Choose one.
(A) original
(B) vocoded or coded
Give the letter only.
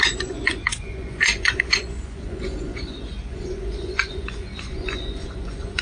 B